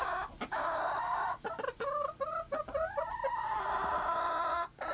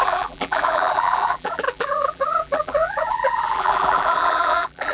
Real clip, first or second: first